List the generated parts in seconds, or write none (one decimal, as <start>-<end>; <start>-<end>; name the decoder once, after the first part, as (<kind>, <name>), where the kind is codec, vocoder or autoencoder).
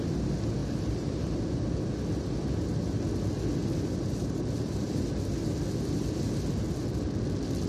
0.6-1.4 (vocoder, BigVGAN v2); 4.2-5.0